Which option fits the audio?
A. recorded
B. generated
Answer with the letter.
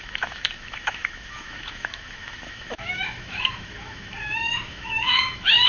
B